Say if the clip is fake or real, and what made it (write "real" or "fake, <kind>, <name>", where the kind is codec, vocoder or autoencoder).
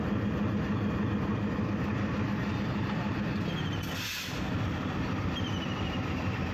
real